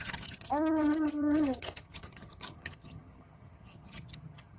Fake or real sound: fake